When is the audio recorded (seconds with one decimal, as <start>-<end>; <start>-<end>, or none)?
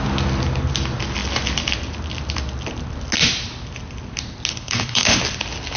0.0-4.5; 5.2-5.8